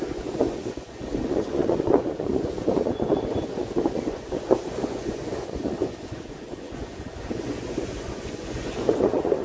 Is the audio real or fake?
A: fake